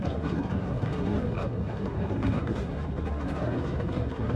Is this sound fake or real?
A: fake